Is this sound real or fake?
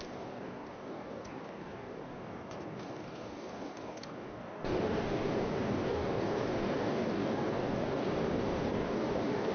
fake